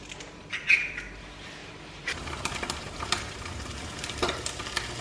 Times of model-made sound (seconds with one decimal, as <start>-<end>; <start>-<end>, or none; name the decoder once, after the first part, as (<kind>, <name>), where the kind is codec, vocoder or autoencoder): 1.6-4.6 (vocoder, BigVGAN v2)

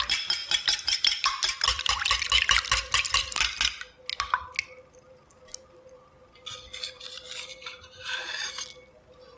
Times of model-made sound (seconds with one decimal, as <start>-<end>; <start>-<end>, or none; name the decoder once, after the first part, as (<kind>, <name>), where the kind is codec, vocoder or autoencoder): 7.6-8.3 (vocoder, BigVGAN v2)

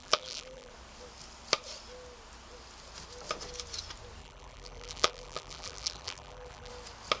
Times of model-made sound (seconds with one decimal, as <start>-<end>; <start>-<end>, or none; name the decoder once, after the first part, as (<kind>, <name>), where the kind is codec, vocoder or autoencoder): 0.0-0.7 (vocoder, BigVGAN v2); 4.2-6.7

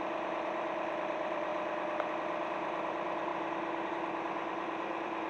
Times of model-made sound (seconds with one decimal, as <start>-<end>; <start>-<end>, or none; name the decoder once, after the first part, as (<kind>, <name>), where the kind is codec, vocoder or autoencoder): 0.0-1.5 (vocoder, BigVGAN v2); 2.1-3.3; 3.9-5.3

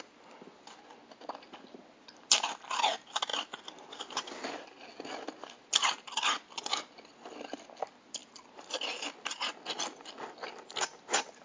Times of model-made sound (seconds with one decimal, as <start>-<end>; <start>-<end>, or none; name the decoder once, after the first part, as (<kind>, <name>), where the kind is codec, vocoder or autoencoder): none

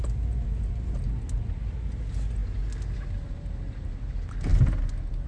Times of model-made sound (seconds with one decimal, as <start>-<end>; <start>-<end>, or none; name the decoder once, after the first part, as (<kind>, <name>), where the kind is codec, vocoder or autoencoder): none

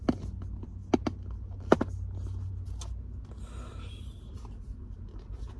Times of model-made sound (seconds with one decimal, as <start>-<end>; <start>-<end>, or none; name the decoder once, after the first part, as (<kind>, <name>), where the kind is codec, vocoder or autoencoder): 3.7-4.8 (vocoder, BigVGAN v2)

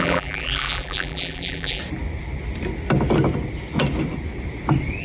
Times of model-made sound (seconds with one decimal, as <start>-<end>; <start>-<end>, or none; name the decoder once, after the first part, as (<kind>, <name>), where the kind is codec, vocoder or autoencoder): 0.0-1.8 (vocoder, BigVGAN v2)